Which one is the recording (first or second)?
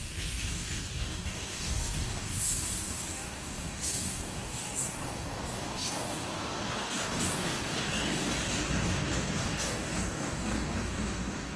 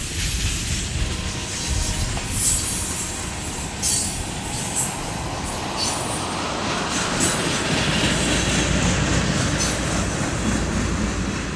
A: second